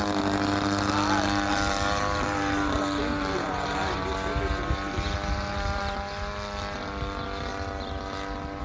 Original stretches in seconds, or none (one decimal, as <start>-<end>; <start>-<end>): 0.0-1.5; 5.8-8.6